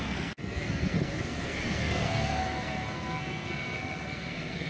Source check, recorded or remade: remade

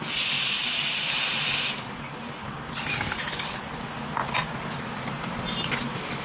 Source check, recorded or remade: recorded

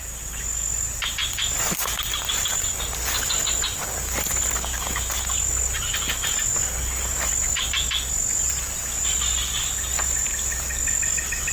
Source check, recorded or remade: recorded